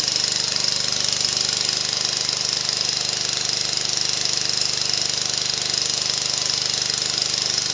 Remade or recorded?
recorded